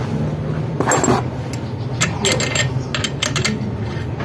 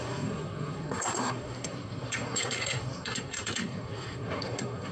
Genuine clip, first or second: first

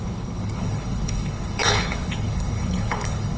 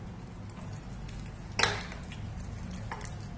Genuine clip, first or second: second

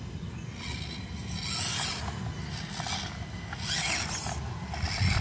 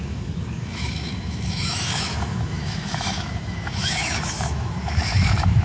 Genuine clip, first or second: first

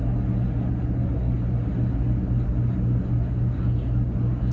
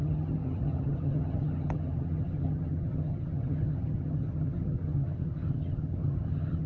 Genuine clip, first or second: first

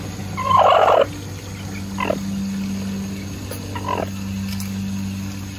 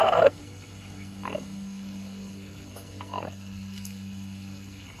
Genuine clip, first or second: first